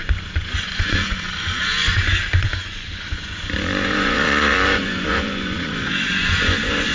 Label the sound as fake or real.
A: fake